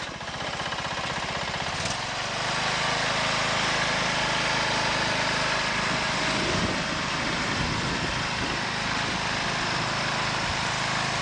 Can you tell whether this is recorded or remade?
recorded